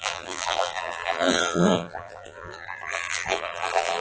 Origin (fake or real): fake